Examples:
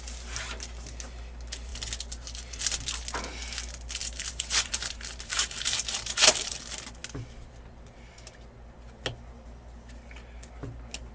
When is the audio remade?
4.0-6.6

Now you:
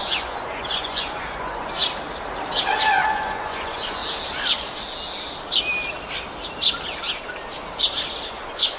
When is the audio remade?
0.0-1.8; 2.9-4.0; 8.3-8.8

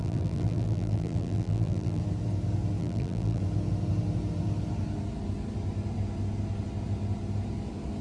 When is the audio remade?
0.0-2.0; 2.8-3.4

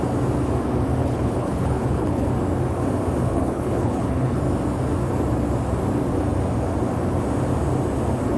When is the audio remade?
1.0-2.3; 3.3-4.4

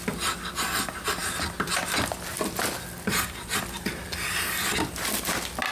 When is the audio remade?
none

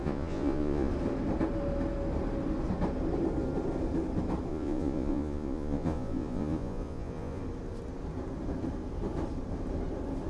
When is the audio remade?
0.0-0.9; 4.5-7.4

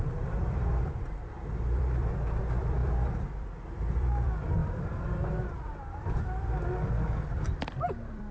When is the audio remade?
0.0-8.3